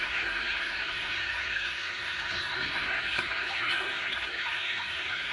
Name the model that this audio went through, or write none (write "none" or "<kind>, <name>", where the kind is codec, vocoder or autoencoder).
codec, SNAC